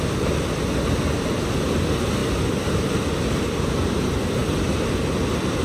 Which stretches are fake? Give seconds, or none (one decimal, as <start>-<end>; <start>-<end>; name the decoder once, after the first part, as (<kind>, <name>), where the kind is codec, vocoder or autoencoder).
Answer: none